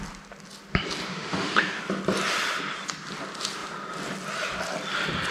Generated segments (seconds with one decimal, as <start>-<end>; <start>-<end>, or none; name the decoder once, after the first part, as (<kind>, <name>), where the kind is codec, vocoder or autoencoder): 1.1-1.8 (autoencoder, DAC-VAE)